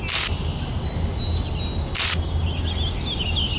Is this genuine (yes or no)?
yes